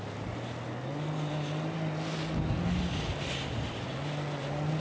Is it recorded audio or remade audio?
recorded